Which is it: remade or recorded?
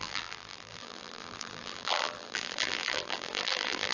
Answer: remade